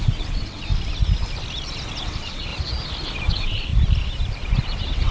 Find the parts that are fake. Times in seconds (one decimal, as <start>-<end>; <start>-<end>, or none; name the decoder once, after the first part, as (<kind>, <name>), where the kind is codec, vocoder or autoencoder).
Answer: 0.0-0.7 (vocoder, WaveNeXt); 2.0-2.5; 3.3-3.7; 4.6-5.1